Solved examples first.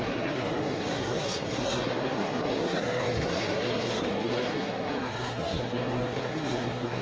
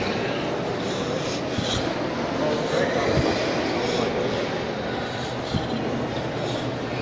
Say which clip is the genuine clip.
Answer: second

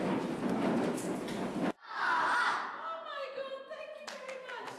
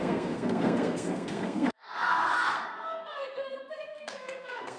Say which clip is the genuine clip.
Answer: first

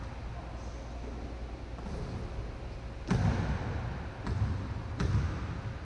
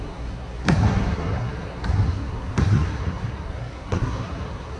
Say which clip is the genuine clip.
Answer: first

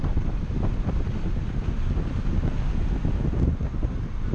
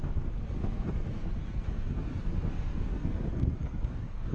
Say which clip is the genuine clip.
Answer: first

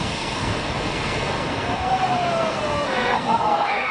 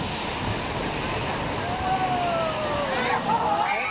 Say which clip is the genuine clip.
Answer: second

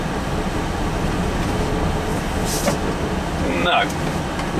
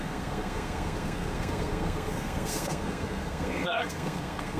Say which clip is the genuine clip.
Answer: first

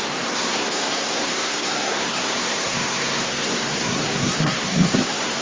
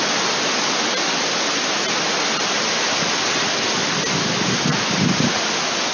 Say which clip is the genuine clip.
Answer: second